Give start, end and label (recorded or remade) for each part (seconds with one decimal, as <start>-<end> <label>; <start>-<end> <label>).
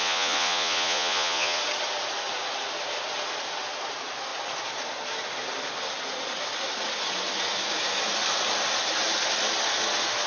0.0-1.6 remade; 1.6-10.3 recorded